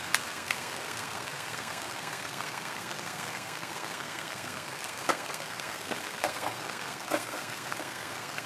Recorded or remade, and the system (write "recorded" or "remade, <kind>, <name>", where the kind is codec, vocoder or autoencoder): remade, codec, SNAC